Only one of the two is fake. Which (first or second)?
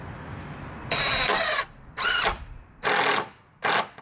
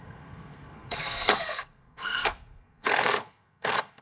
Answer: second